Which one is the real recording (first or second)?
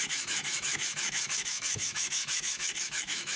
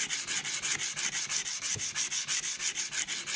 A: second